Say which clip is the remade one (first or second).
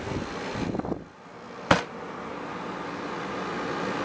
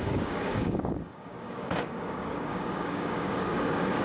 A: second